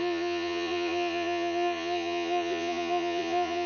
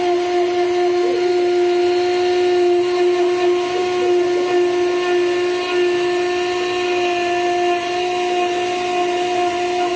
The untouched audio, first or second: second